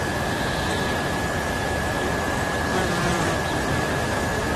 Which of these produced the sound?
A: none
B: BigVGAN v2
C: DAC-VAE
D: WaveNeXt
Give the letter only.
B